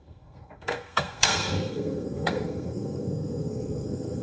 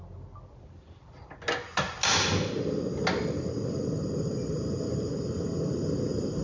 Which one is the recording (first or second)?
second